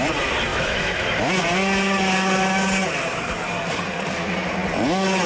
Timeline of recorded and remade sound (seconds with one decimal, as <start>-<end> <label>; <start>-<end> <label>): 0.0-0.5 recorded; 0.5-1.2 remade; 1.2-5.3 recorded